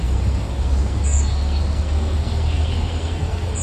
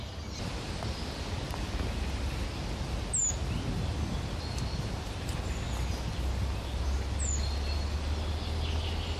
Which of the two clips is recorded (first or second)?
second